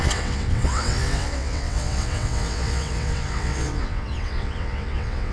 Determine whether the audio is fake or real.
fake